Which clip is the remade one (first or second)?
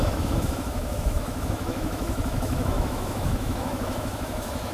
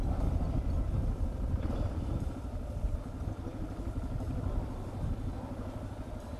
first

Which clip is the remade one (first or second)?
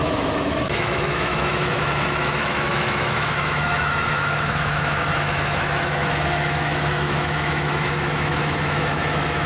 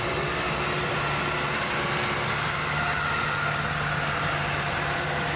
first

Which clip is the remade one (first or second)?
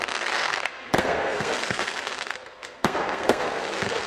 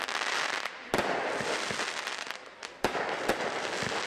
first